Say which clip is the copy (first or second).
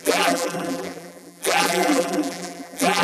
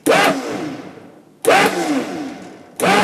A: first